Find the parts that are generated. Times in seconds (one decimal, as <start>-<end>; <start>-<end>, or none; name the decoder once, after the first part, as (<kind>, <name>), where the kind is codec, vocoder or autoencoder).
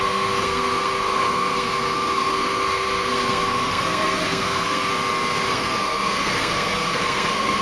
0.0-4.9 (codec, SNAC); 5.5-7.6